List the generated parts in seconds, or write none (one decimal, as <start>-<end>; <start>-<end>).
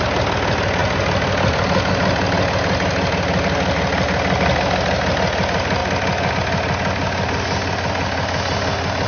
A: none